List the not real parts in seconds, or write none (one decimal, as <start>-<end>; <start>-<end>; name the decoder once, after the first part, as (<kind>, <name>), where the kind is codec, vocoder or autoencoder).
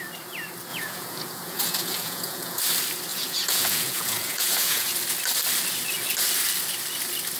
0.7-2.6 (vocoder, Vocos); 3.1-4.9